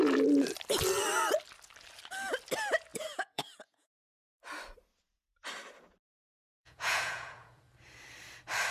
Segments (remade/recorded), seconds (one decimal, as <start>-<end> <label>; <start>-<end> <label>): 0.0-2.9 recorded; 2.9-4.0 remade; 4.0-6.3 recorded; 6.3-7.6 remade; 7.6-8.7 recorded